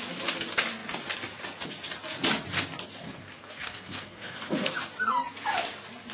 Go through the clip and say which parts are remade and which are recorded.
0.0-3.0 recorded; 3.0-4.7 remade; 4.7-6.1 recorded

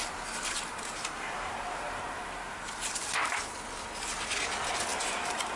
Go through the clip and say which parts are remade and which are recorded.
0.0-3.4 remade; 3.4-4.9 recorded; 4.9-5.6 remade

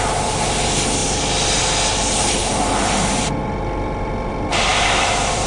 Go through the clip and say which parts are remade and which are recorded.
0.0-4.7 recorded; 4.7-5.5 remade

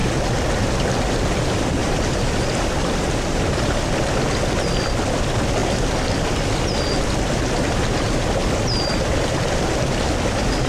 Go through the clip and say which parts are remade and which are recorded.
0.0-1.8 recorded; 1.8-3.8 remade; 3.8-10.7 recorded

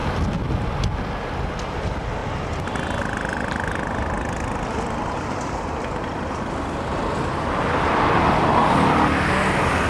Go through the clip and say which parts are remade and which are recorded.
0.0-2.2 recorded; 2.2-5.5 remade; 5.5-9.9 recorded